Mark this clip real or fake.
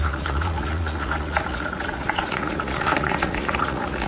fake